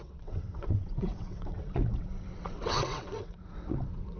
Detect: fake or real fake